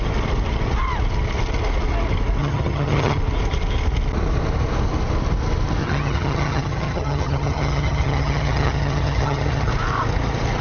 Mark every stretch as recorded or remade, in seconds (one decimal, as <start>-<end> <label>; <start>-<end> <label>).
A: 0.0-2.4 recorded; 2.4-3.2 remade; 3.2-5.8 recorded; 5.8-9.7 remade; 9.7-10.6 recorded